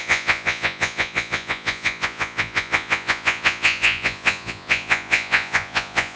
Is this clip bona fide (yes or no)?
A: no